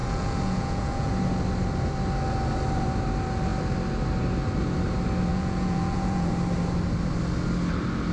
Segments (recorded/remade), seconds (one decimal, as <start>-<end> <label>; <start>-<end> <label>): 0.0-1.1 remade; 1.1-5.3 recorded; 5.3-6.3 remade; 6.3-8.1 recorded